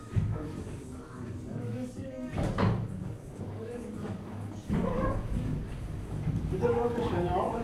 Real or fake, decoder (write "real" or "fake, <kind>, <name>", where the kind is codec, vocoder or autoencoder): fake, codec, DAC